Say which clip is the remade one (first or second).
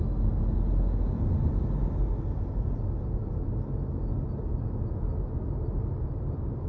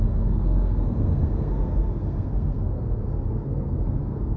second